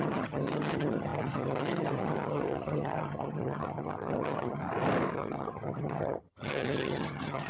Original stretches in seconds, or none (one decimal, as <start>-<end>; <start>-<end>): 4.6-5.1